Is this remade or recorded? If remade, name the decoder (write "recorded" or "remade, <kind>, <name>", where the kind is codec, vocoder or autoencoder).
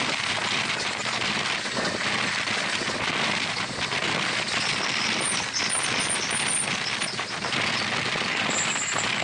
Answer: recorded